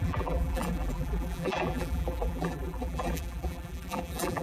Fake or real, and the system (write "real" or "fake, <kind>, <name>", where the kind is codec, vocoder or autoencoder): fake, vocoder, BigVGAN v2